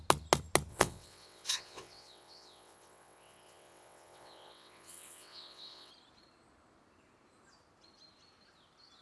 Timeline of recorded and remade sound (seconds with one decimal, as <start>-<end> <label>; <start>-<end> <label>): 0.0-0.7 recorded; 0.7-5.9 remade; 5.9-9.0 recorded